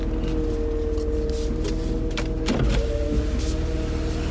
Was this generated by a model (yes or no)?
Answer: no